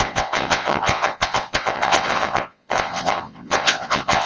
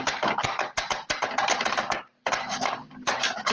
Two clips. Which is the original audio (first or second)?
second